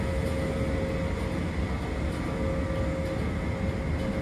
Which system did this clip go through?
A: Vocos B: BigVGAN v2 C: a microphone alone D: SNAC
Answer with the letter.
C